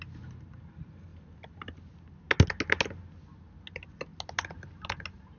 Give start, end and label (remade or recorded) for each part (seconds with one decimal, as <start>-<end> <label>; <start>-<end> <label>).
0.0-5.4 recorded